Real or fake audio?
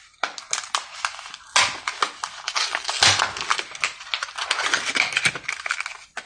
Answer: real